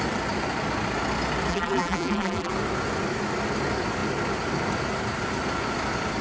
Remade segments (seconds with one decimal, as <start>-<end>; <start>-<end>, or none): 1.5-2.5